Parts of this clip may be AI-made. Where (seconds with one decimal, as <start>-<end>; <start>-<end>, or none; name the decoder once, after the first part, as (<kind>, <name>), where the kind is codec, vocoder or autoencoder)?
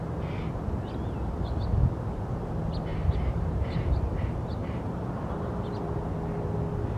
2.9-4.0 (vocoder, BigVGAN v2); 4.6-5.3